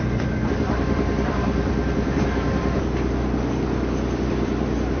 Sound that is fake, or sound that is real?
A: fake